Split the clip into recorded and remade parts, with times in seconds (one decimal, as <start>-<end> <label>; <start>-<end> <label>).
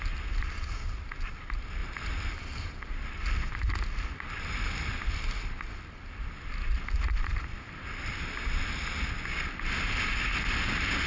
0.0-1.8 recorded; 1.8-5.0 remade; 5.0-11.1 recorded